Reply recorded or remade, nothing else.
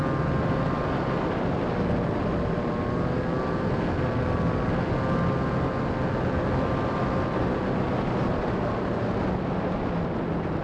recorded